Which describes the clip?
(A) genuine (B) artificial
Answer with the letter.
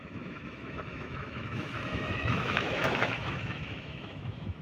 B